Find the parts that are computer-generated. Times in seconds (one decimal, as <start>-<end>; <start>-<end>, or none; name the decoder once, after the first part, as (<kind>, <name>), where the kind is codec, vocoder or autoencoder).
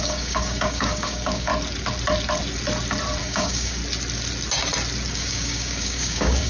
0.0-1.5 (codec, DAC); 3.2-3.8; 5.1-6.5